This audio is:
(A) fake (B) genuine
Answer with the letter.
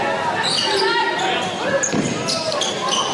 B